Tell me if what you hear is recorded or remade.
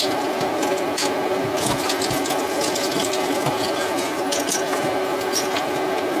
recorded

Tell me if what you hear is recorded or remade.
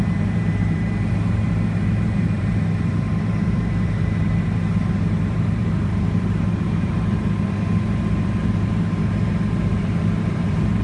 remade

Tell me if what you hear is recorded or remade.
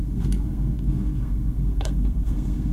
remade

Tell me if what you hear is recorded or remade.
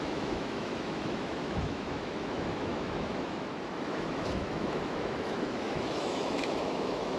remade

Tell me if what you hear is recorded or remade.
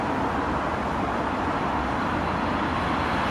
recorded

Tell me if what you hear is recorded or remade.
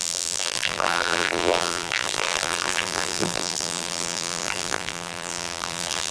remade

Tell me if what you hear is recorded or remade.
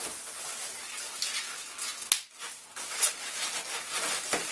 recorded